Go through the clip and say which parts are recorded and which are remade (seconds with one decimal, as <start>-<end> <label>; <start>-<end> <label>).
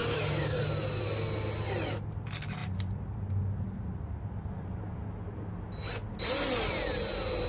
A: 0.0-0.6 remade; 0.6-7.5 recorded